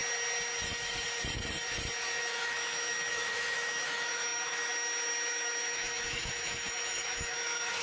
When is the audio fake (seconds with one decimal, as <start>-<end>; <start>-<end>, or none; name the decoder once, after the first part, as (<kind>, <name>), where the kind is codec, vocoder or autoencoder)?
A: 2.2-7.8 (autoencoder, DAC-VAE)